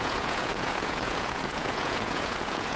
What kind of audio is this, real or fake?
fake